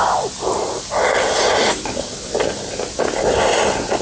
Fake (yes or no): no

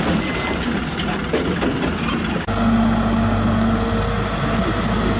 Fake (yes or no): no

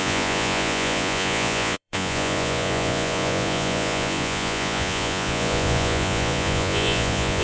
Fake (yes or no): yes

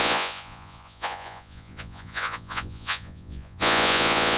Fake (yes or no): yes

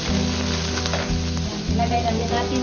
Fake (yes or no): no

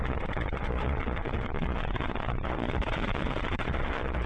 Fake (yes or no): yes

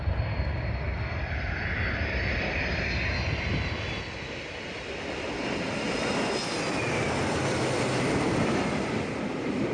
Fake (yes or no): no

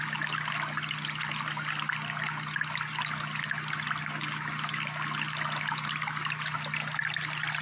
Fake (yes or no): no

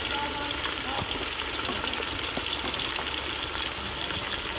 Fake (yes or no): no